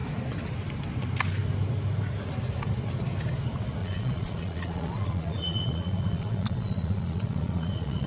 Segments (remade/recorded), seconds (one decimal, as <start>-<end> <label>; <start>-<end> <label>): 0.0-3.8 recorded; 3.8-8.1 remade